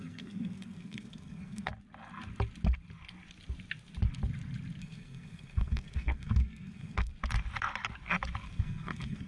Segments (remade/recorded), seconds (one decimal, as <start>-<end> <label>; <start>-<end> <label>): 0.0-1.7 remade; 1.7-4.8 recorded; 4.8-7.1 remade; 7.1-8.5 recorded; 8.5-9.3 remade